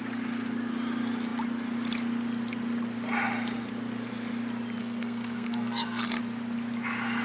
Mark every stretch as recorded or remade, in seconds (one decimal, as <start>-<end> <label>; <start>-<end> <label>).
0.0-4.8 recorded; 4.8-6.2 remade; 6.2-7.2 recorded